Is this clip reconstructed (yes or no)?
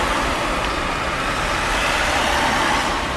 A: no